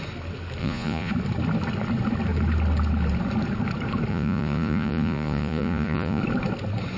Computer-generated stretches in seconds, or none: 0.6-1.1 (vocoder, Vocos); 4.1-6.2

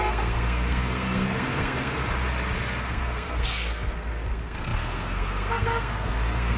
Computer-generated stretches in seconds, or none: 0.0-2.0 (codec, SNAC); 2.8-6.6

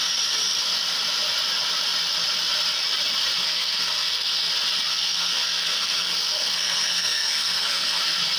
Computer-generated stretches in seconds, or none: 3.4-4.5 (codec, SNAC); 4.9-8.0

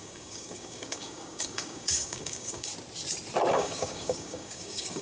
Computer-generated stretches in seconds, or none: 0.0-2.7 (codec, DAC); 3.5-5.0

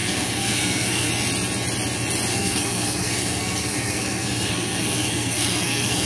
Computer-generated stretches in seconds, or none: 0.0-1.1 (codec, SNAC); 2.3-6.1

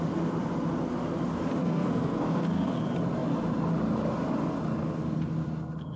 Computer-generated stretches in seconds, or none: 1.6-2.8 (codec, SNAC)

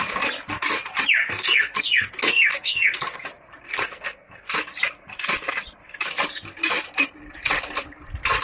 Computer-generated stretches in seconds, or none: 1.2-3.2 (codec, SNAC); 3.7-4.5